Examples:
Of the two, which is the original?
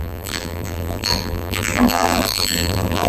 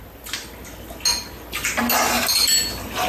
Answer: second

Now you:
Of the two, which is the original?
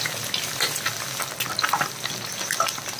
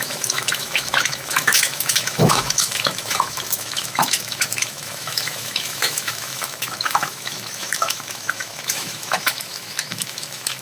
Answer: first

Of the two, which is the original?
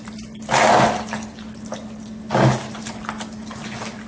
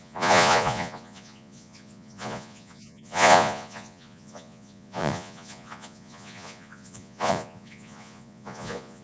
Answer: first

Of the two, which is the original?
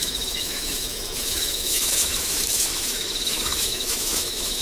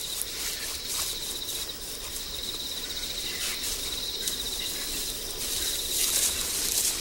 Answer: second